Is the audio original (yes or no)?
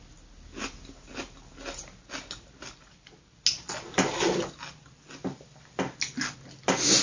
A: yes